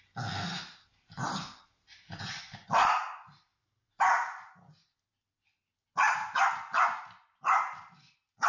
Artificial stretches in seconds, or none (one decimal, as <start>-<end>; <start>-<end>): none